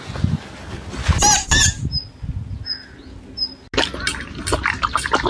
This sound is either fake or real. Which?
real